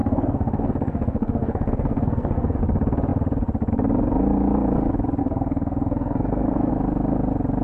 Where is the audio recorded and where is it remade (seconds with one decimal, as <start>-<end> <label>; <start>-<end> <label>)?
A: 0.0-2.6 remade; 2.6-5.2 recorded; 5.2-6.7 remade; 6.7-7.6 recorded